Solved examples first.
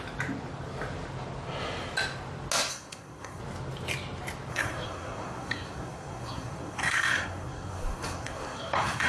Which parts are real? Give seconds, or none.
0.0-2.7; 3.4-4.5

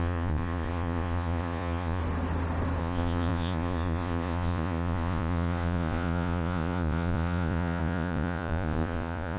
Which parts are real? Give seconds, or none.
2.0-2.8

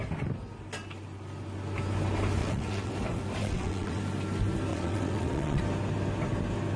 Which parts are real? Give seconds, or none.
0.0-2.4; 2.9-3.4; 4.0-4.7; 5.6-6.8

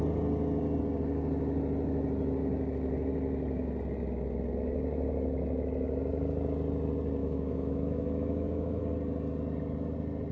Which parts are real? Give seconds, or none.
0.0-7.2; 8.8-10.3

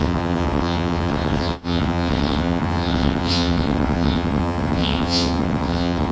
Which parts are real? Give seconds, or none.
none

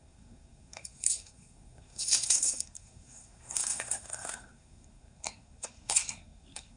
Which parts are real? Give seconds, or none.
none

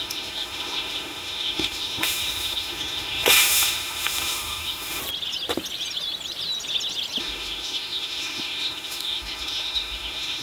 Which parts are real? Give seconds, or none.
5.0-7.2